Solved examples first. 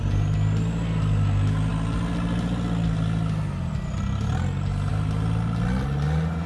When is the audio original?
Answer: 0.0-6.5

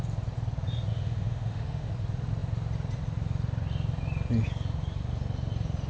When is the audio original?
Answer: 0.0-0.9; 1.9-5.9

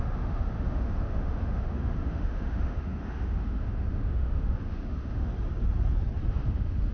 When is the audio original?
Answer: 5.3-6.3

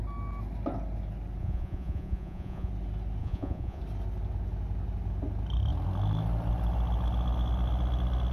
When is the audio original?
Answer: 0.0-1.4; 2.7-3.2; 3.8-8.3

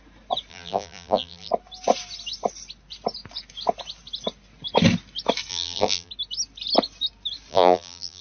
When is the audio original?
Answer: 0.0-0.5; 1.5-5.5; 6.1-7.5

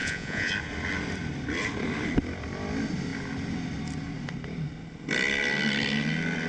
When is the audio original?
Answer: 0.5-6.5